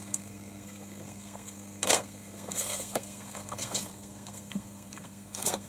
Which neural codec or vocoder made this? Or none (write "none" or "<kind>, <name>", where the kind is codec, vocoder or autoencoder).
codec, SNAC